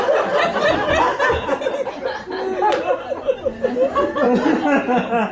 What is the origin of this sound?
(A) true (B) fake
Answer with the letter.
A